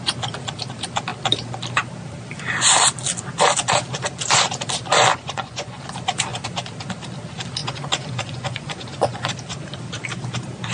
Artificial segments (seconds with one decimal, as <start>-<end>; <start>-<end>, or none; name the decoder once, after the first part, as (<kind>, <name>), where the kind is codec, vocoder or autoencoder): 5.1-5.8 (vocoder, Vocos); 7.6-9.3